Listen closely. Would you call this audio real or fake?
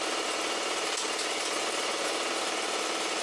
real